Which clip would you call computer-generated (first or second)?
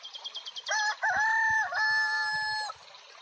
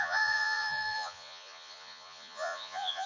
second